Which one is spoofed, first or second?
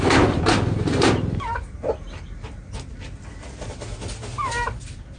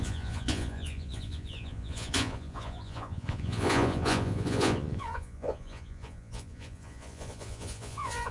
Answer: second